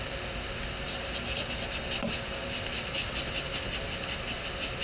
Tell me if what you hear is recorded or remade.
recorded